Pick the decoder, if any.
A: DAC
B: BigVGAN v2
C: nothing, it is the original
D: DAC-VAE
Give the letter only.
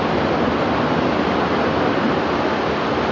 C